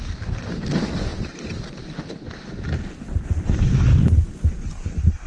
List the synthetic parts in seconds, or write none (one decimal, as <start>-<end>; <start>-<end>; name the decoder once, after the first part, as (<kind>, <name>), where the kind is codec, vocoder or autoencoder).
1.1-2.2 (vocoder, BigVGAN v2)